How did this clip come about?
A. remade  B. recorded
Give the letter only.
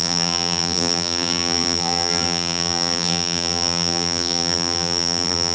A